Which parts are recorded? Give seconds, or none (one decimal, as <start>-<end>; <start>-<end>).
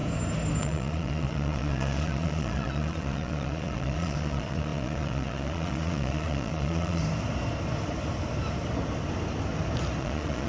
0.0-0.6; 7.0-10.0